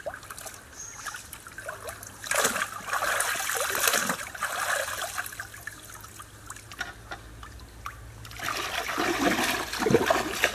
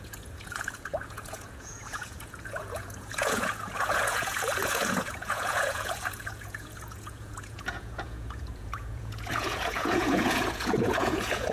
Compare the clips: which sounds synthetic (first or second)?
second